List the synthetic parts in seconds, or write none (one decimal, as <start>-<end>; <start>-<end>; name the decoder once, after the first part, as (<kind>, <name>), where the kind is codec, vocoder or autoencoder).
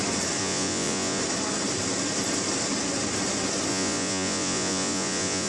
0.4-1.2 (vocoder, Vocos); 3.7-5.5